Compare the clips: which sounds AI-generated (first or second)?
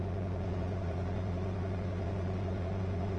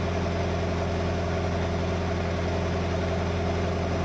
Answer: first